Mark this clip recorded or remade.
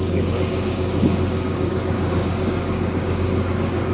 remade